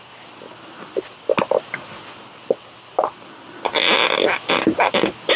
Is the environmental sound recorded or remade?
recorded